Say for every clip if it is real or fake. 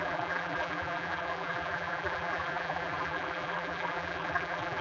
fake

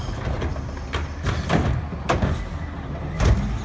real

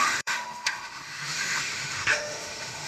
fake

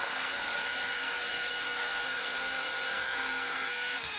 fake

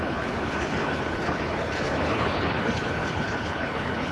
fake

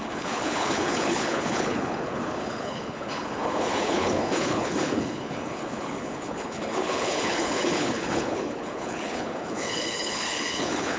fake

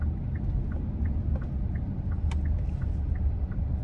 real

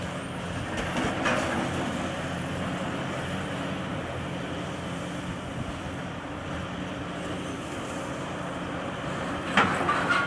real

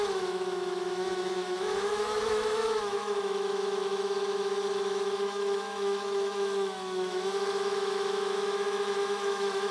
fake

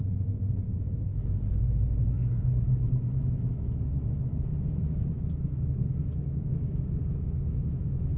fake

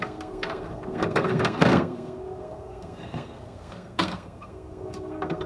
fake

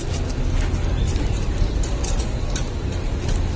real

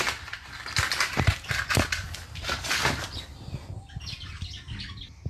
real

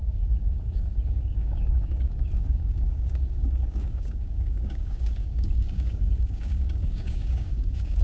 fake